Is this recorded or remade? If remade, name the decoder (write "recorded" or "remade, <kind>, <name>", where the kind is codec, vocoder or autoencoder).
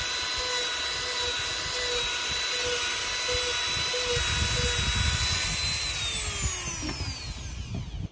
recorded